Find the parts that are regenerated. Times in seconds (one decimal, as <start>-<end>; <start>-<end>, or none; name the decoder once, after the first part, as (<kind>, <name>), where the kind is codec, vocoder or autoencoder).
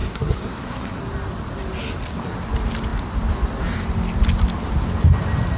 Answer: 0.0-1.0 (codec, SNAC)